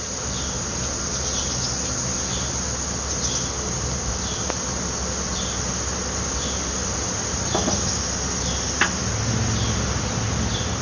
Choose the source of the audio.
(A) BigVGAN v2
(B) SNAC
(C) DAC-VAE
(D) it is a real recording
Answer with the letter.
D